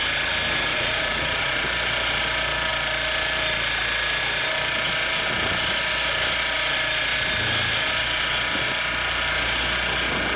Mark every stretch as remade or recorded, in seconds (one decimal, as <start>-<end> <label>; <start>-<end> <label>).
0.0-0.7 recorded; 0.7-1.6 remade; 1.6-10.4 recorded